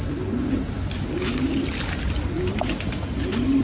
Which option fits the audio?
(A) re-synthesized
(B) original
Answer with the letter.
B